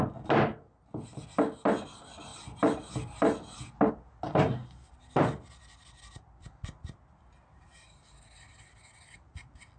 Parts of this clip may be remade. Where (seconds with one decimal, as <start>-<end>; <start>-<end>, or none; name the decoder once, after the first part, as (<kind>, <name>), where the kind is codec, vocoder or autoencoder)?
none